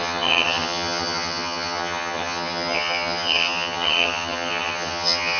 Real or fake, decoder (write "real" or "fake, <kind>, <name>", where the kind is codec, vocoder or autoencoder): fake, vocoder, HiFi-GAN